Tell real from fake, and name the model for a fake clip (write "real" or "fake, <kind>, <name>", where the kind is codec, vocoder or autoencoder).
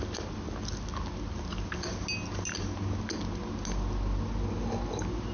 real